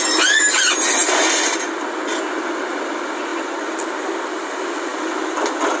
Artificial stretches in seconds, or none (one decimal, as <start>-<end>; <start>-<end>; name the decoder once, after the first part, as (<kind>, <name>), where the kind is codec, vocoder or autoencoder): none